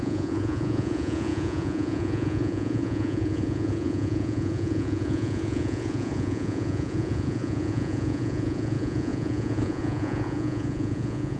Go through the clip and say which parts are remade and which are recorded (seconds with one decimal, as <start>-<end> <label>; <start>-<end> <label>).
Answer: 0.0-11.4 remade